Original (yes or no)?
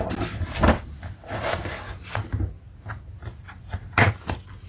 yes